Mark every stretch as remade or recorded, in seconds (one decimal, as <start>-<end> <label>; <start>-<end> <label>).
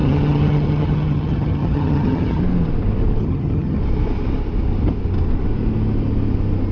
0.0-2.4 remade; 2.4-3.2 recorded; 3.2-3.8 remade; 3.8-6.7 recorded